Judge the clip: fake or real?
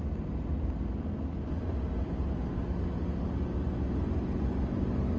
real